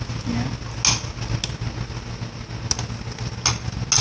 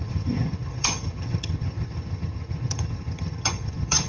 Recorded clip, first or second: first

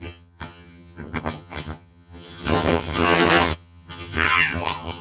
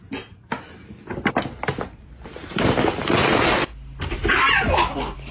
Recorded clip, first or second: second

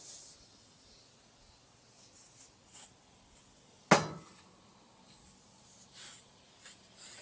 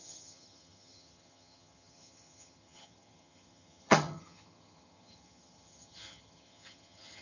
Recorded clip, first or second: first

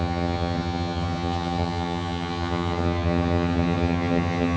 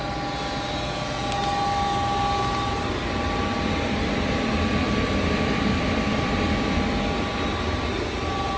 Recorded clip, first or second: second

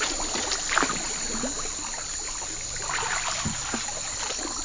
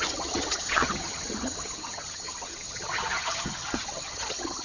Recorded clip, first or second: first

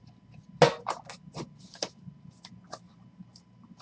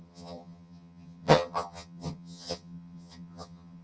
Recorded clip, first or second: first